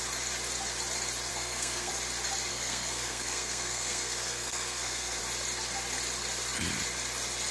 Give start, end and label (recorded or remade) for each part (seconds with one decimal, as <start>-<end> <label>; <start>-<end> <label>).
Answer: 0.0-1.3 recorded; 1.3-1.9 remade; 1.9-2.5 recorded; 2.5-5.2 remade; 5.2-7.5 recorded